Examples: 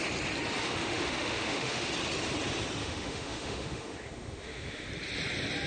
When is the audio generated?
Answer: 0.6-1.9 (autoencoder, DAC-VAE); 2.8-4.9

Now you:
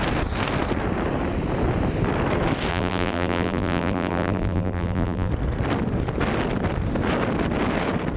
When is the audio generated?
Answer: 2.7-5.3 (vocoder, BigVGAN v2)

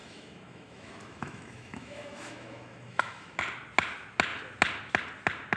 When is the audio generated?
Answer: 0.0-3.4 (autoencoder, DAC-VAE)

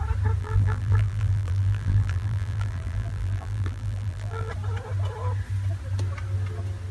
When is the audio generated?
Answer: 0.4-4.5 (vocoder, BigVGAN v2)

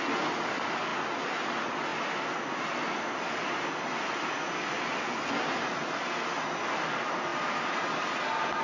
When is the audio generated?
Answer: none

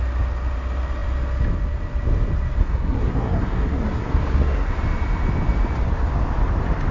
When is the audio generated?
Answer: 2.6-4.7 (codec, SNAC)

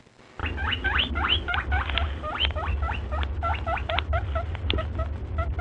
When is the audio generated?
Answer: none

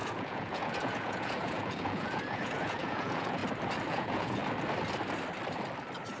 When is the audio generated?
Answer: 0.0-3.4 (vocoder, Vocos); 3.9-4.4